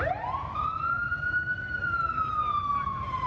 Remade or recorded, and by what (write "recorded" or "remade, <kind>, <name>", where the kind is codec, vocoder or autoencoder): recorded